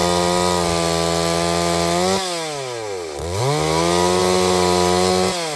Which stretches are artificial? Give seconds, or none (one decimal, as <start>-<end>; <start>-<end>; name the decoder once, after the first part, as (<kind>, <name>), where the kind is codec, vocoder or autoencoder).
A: none

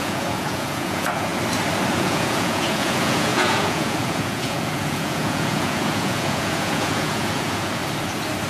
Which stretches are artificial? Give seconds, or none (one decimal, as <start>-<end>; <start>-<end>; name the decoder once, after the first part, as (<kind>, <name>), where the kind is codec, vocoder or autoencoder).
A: 0.0-1.3 (vocoder, Vocos); 1.9-7.8

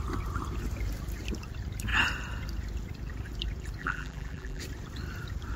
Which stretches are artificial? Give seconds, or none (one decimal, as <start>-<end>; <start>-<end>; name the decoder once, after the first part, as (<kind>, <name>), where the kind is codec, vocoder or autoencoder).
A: 3.8-4.6 (vocoder, BigVGAN v2)

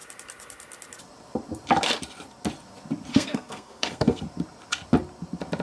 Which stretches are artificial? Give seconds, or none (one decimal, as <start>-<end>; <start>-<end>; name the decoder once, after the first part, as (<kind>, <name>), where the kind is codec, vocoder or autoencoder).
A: 3.1-4.2 (codec, SNAC)